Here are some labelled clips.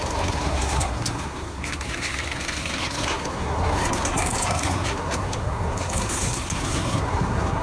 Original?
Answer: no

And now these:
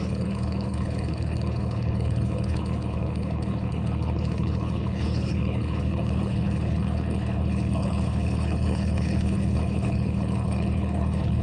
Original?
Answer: no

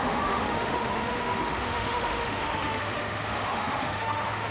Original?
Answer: no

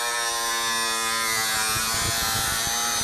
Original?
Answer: yes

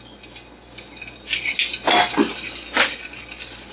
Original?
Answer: yes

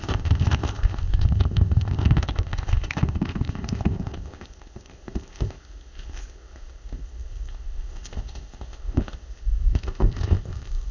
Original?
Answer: no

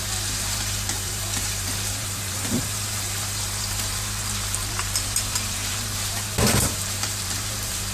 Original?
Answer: no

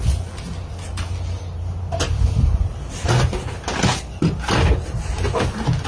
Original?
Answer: yes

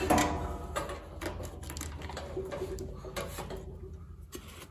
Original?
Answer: yes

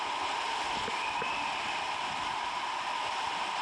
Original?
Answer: yes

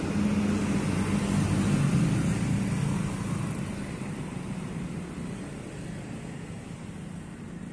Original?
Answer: yes